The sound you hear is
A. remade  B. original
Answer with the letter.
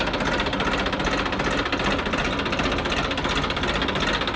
B